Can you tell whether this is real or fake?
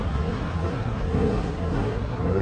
fake